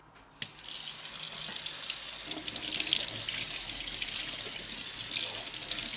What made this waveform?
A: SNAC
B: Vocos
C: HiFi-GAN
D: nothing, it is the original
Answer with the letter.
D